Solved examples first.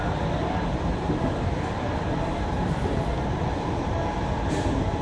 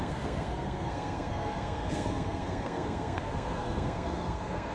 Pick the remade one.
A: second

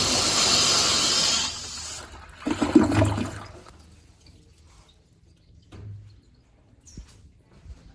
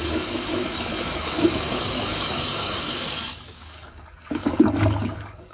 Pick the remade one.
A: second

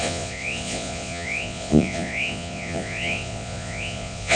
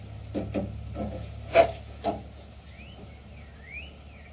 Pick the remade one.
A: first